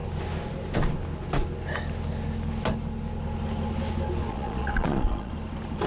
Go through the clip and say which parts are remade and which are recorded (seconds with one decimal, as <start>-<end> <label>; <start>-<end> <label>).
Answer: 0.0-4.3 recorded; 4.3-5.3 remade; 5.3-5.9 recorded